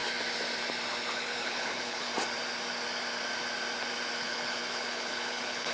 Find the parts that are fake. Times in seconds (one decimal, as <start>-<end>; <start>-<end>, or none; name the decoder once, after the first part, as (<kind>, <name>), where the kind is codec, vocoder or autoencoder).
1.1-2.1 (codec, HILCodec); 4.2-5.7